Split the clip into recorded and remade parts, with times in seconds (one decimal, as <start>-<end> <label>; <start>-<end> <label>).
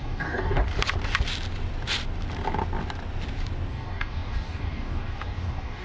0.0-0.6 remade; 0.6-3.7 recorded; 3.7-5.8 remade